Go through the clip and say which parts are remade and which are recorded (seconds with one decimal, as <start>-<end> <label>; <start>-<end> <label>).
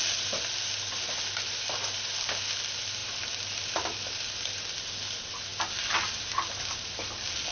0.0-7.5 recorded